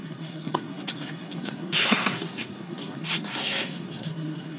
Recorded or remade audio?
remade